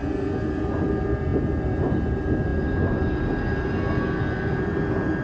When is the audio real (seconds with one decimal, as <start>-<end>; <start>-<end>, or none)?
0.0-5.2